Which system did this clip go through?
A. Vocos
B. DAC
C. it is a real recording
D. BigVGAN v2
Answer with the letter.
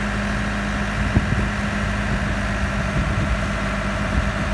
C